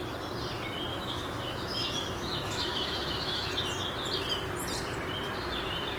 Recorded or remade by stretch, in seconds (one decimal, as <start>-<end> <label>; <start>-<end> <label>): 0.0-0.9 recorded; 0.9-3.5 remade; 3.5-6.0 recorded